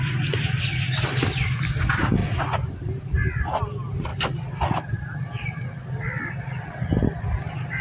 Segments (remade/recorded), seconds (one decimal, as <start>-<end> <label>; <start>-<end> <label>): 0.0-7.8 recorded